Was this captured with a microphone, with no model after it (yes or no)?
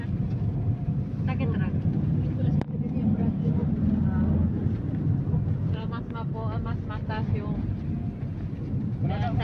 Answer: yes